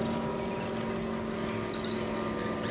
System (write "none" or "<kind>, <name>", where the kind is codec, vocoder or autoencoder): none